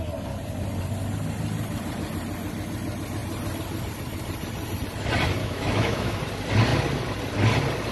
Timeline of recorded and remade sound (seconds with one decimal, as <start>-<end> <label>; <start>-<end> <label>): 0.0-5.4 recorded; 5.4-6.2 remade; 6.2-7.9 recorded